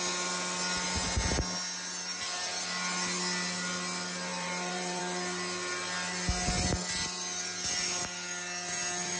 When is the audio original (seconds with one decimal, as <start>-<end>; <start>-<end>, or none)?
0.0-4.3; 5.0-9.2